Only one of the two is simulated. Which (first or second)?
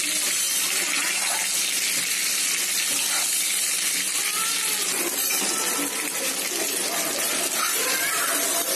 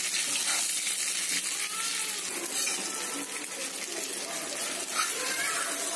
first